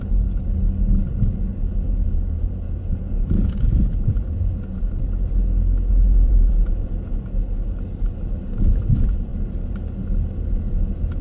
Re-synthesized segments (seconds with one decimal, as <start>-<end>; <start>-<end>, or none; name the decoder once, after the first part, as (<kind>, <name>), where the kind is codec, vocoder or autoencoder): 1.5-5.0 (vocoder, Vocos); 5.9-7.2